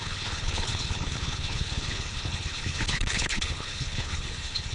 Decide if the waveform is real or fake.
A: fake